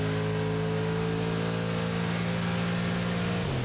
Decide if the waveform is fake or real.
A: real